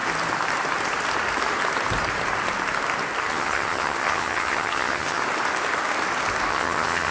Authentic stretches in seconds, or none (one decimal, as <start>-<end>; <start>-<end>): 0.0-3.3; 5.2-6.5